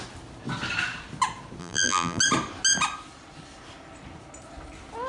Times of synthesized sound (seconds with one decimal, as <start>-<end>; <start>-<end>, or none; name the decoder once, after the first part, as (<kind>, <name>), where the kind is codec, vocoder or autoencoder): 1.6-2.2 (vocoder, BigVGAN v2)